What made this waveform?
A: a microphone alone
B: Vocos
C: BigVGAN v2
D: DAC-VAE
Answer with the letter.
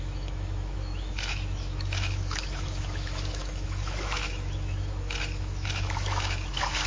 D